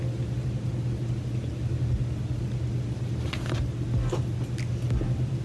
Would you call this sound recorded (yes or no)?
yes